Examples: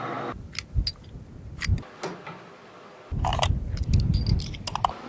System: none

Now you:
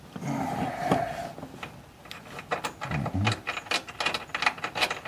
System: none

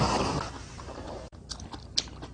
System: none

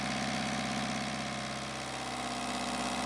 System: none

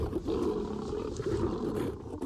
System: none